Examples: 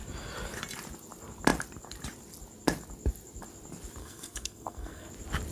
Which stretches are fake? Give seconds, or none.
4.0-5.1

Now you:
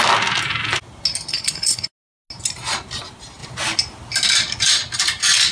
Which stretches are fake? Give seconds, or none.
1.3-1.9

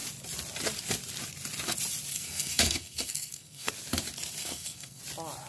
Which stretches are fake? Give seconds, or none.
2.1-3.7; 4.4-5.0

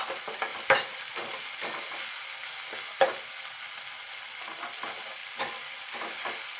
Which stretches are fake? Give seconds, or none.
5.2-6.0

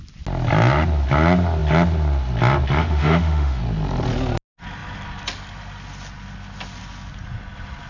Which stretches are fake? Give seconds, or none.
2.8-3.6

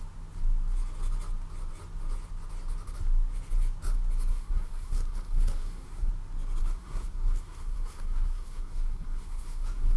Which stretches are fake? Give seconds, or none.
4.3-6.1; 6.6-10.0

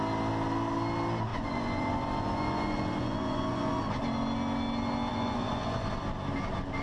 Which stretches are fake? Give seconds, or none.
1.3-3.8; 5.1-5.9